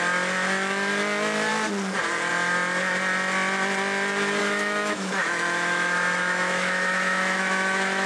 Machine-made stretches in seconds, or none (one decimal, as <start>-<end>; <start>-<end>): 4.4-8.1